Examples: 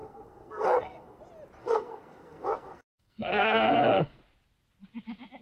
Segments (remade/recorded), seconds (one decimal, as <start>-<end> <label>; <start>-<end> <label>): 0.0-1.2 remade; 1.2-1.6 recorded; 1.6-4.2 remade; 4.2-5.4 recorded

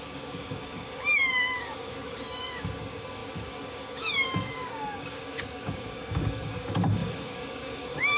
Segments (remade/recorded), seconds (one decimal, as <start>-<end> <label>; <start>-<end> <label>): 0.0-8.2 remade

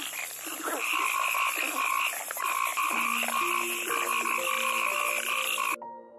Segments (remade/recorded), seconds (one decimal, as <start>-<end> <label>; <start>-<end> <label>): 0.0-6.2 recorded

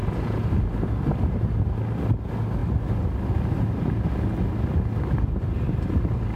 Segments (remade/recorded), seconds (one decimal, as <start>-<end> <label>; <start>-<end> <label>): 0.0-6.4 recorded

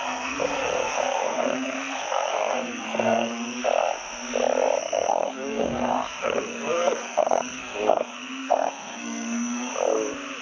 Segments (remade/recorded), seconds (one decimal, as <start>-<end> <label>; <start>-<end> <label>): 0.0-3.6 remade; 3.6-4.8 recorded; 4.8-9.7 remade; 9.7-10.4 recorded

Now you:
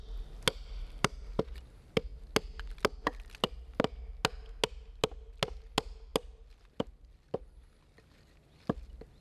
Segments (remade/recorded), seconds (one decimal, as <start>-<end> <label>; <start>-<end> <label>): 0.0-9.2 recorded

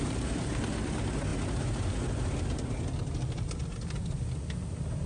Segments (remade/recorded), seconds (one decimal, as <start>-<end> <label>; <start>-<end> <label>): 0.0-5.1 recorded